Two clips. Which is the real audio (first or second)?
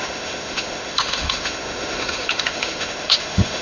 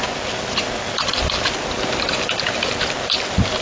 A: second